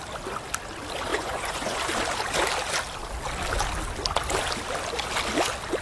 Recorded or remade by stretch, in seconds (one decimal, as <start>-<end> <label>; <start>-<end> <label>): 0.0-1.1 recorded; 1.1-1.8 remade; 1.8-5.8 recorded